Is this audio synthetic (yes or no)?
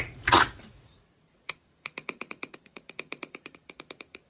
yes